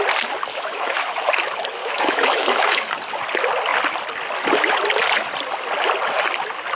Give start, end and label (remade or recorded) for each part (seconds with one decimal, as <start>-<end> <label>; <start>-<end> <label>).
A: 0.0-0.5 recorded; 0.5-1.3 remade; 1.3-1.8 recorded; 1.8-2.9 remade; 2.9-6.8 recorded

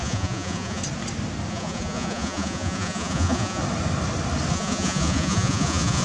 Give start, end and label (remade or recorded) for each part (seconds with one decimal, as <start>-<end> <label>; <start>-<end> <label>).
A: 0.0-0.8 remade; 0.8-1.5 recorded; 1.5-3.6 remade; 3.6-4.5 recorded; 4.5-6.0 remade